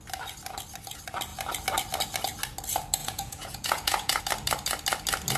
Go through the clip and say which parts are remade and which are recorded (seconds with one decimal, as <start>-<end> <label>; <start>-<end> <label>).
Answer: 0.0-3.0 recorded; 3.0-4.2 remade; 4.2-5.4 recorded